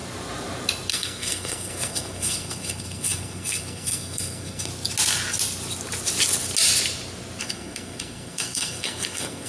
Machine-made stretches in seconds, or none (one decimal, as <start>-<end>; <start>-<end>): 0.9-4.7; 7.4-9.5